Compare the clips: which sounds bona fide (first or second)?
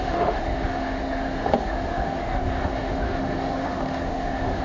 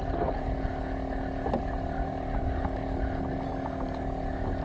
second